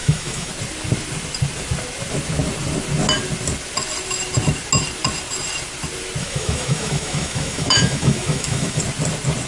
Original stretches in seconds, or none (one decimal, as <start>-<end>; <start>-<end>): 0.5-6.2; 8.8-9.5